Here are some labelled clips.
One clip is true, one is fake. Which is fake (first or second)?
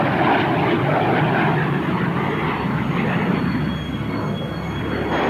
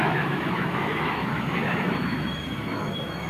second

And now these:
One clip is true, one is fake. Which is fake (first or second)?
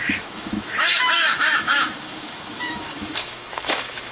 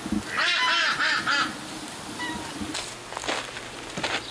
first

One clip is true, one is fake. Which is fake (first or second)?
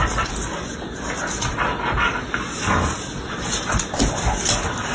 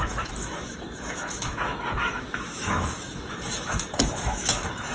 second